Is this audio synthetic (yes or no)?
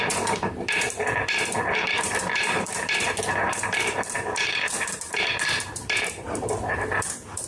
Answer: yes